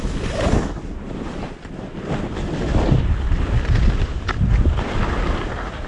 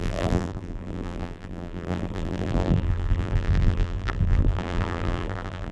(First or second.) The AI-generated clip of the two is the second